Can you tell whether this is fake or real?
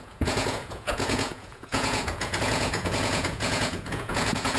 fake